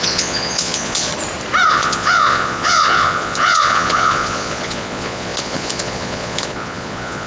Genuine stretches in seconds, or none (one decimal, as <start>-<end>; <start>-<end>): 1.1-1.7